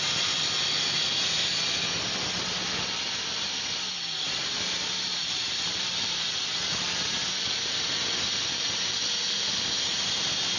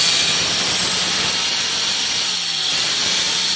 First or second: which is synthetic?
first